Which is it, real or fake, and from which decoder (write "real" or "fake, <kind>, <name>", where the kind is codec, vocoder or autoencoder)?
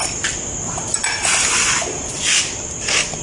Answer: real